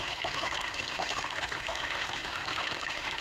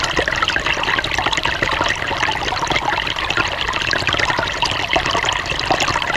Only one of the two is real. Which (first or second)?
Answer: second